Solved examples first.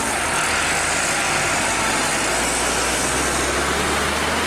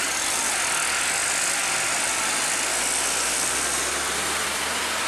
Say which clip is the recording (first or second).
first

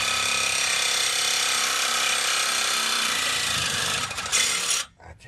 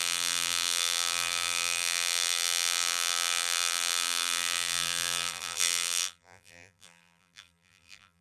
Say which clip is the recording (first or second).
first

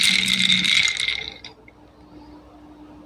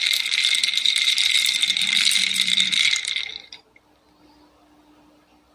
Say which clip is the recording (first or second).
first